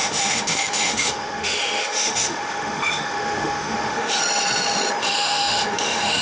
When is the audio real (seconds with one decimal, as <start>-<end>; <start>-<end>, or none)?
4.2-5.0